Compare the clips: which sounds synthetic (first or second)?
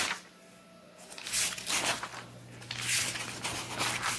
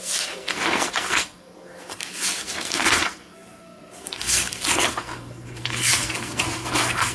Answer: second